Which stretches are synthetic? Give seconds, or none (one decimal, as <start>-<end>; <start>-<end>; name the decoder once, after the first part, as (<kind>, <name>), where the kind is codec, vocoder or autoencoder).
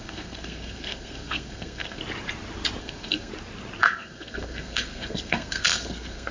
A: 0.0-2.0 (codec, SNAC); 2.8-3.3; 3.8-6.3